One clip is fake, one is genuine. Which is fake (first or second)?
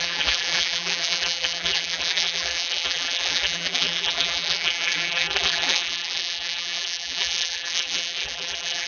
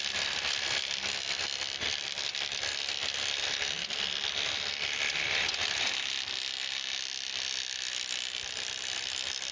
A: first